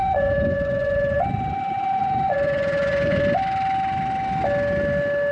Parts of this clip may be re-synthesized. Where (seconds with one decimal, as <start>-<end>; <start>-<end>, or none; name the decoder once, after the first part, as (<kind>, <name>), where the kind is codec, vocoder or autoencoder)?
0.0-3.2 (vocoder, Vocos)